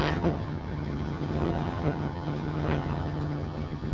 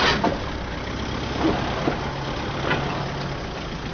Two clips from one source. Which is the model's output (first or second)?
first